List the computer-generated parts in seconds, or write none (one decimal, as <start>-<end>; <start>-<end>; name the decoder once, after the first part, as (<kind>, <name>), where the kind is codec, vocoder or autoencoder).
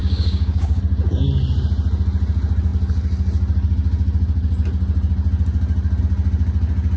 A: 0.0-0.8 (codec, DAC)